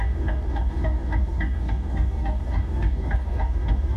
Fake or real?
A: fake